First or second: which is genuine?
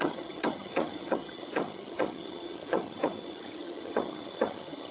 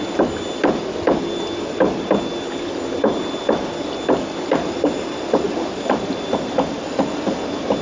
second